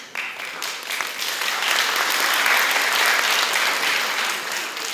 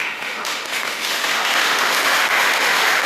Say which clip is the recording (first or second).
first